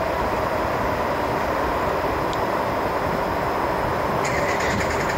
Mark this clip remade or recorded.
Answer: recorded